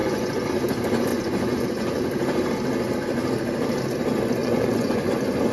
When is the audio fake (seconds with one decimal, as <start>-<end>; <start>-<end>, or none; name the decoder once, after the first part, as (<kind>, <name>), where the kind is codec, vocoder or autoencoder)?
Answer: 0.0-0.5 (vocoder, Vocos); 1.1-2.0; 4.4-5.0